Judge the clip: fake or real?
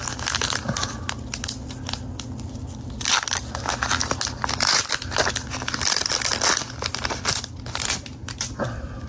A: real